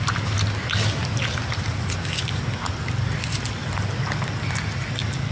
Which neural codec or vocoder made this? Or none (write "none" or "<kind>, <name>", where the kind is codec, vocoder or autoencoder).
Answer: none